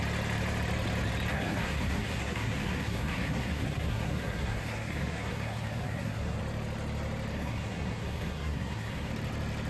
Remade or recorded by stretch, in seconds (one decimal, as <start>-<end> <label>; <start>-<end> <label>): 0.0-1.3 recorded; 1.3-6.4 remade; 6.4-7.3 recorded; 7.3-9.1 remade; 9.1-9.7 recorded